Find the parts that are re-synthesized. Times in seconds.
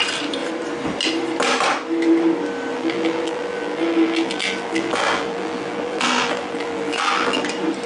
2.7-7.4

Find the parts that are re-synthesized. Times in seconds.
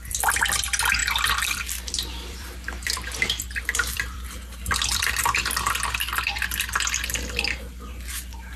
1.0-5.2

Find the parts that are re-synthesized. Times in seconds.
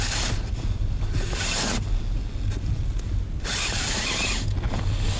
3.5-4.0